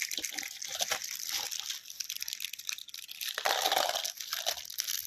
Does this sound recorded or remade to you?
recorded